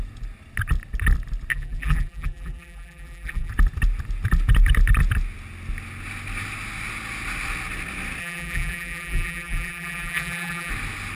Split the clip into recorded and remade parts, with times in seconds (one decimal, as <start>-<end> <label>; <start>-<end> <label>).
0.0-1.5 recorded; 1.5-3.5 remade; 3.5-8.2 recorded; 8.2-10.7 remade; 10.7-11.1 recorded